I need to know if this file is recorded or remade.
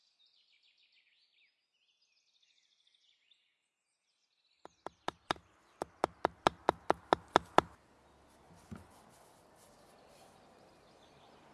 recorded